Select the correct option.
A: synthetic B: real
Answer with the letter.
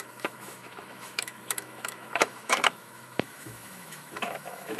A